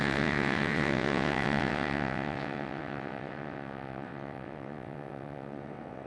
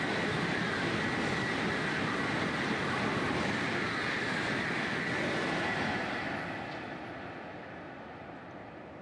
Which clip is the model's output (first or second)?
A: first